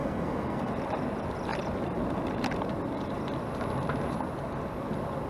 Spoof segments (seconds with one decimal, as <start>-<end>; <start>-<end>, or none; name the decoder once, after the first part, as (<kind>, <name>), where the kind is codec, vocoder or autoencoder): 0.0-0.7 (codec, SNAC)